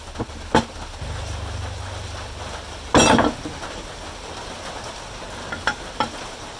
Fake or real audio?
real